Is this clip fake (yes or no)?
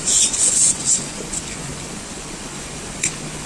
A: yes